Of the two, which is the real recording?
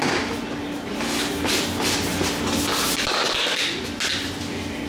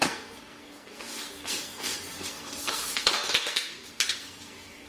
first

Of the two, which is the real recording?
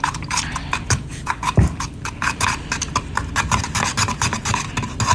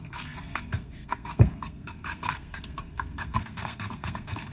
first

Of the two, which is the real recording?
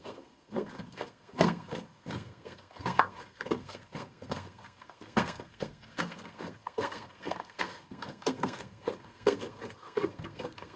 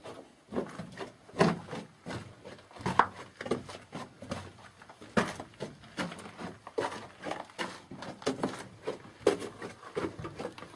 second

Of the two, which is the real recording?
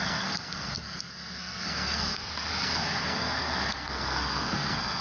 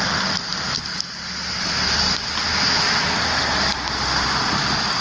second